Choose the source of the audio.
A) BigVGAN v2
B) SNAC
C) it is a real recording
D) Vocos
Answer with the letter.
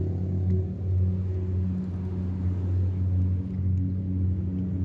C